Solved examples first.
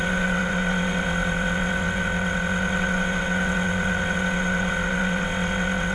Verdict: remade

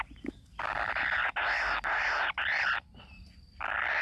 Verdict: recorded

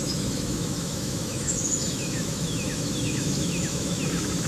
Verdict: remade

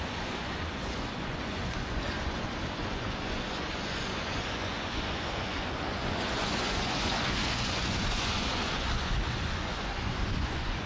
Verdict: remade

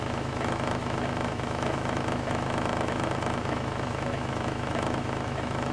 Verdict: remade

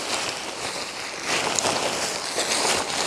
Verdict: recorded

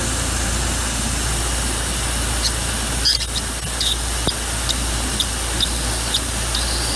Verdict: recorded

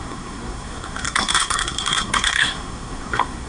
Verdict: remade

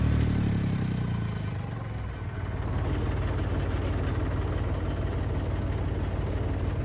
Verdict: recorded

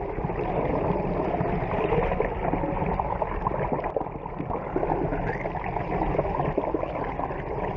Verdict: recorded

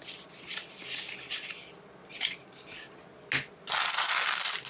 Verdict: recorded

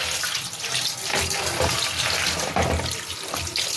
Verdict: recorded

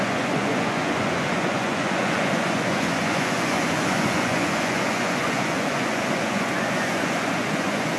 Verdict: remade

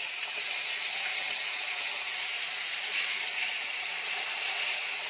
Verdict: remade